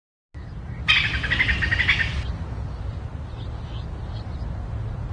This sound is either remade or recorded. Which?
recorded